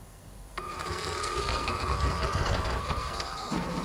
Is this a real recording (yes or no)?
no